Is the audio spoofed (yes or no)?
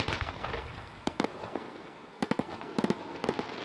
yes